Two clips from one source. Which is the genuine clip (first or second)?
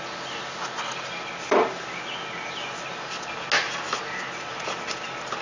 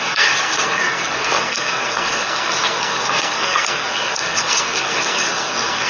first